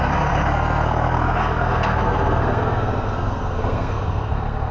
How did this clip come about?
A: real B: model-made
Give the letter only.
B